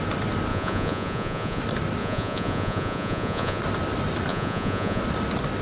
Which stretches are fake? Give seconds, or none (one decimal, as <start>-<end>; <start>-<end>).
0.5-1.6; 2.0-3.6; 4.3-5.0